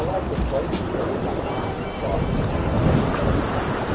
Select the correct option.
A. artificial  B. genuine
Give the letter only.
B